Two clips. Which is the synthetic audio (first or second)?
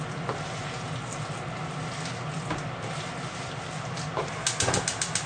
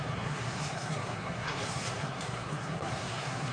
second